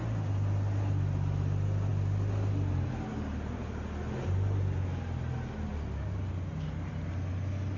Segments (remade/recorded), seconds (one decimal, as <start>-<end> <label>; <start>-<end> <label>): 0.0-7.8 recorded